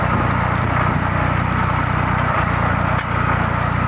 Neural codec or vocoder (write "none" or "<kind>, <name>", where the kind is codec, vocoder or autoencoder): none